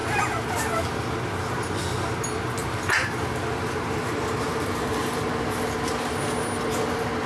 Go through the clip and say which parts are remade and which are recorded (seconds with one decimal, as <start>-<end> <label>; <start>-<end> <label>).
0.0-2.6 recorded; 2.6-5.5 remade; 5.5-7.3 recorded